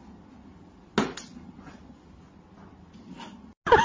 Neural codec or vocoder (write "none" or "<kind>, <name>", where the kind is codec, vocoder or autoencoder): none